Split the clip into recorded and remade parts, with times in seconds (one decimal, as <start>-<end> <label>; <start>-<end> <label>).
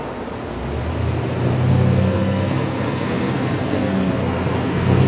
0.0-1.7 recorded; 1.7-5.1 remade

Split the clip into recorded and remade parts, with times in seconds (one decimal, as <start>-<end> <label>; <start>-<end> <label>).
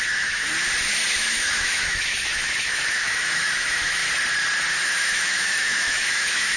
0.0-0.5 remade; 0.5-1.1 recorded; 1.1-4.0 remade; 4.0-4.8 recorded; 4.8-6.6 remade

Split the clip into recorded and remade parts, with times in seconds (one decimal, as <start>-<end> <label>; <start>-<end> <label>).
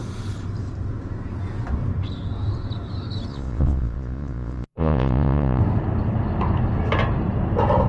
0.0-3.3 recorded; 3.3-5.6 remade; 5.6-7.9 recorded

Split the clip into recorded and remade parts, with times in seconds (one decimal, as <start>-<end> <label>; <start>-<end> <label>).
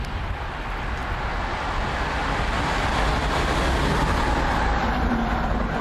0.0-4.8 recorded; 4.8-5.8 remade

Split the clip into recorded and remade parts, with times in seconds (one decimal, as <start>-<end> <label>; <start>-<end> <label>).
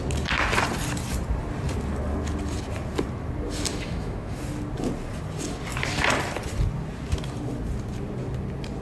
0.0-3.7 recorded; 3.7-4.4 remade; 4.4-8.8 recorded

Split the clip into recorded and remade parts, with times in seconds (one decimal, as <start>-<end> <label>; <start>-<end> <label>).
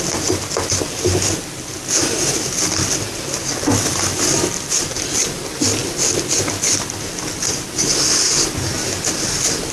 0.0-9.7 recorded